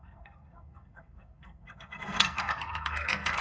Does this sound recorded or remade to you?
remade